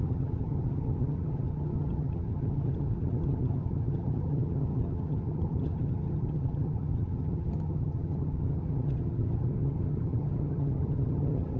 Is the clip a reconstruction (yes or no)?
yes